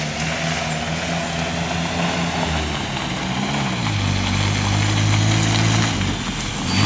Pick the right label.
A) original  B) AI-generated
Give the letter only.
A